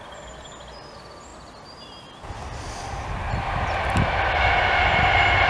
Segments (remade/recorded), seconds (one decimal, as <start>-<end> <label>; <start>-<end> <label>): 0.0-5.5 recorded